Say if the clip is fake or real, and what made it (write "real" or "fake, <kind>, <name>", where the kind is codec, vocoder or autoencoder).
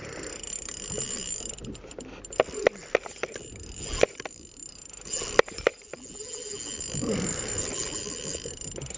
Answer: real